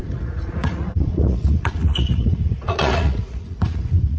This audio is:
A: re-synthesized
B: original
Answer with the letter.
A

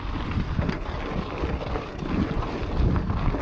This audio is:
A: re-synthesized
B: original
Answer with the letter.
B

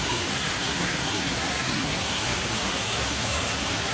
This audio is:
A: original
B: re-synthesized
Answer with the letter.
B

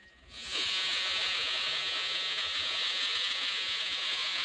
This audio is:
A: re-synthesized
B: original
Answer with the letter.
A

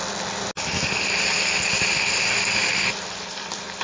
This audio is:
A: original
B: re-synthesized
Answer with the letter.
A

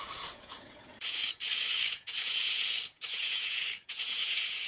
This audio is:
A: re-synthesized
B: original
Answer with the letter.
A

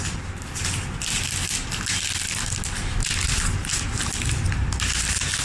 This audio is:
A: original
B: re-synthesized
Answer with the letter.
A